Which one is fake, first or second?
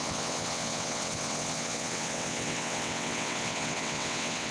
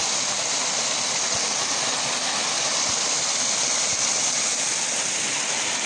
first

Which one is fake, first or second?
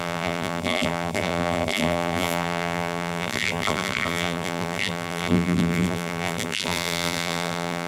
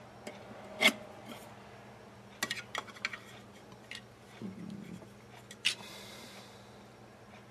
first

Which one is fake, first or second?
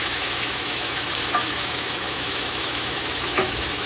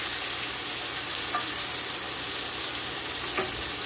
first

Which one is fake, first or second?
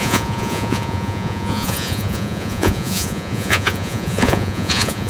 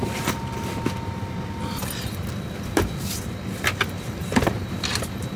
first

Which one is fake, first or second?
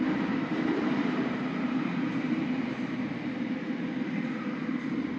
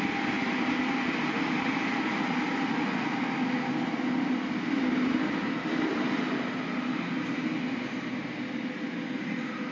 first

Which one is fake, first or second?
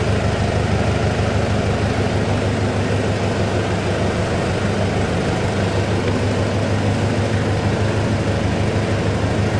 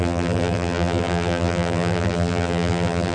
second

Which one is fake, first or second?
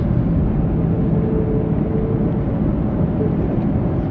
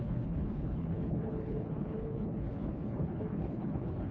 second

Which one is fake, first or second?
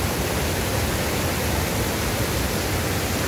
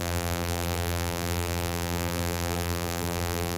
second